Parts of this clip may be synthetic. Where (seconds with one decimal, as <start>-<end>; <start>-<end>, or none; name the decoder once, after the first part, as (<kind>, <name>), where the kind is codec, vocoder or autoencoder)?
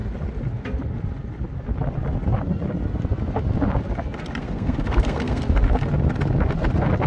4.4-5.4 (codec, SNAC)